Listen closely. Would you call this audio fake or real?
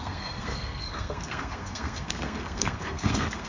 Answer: fake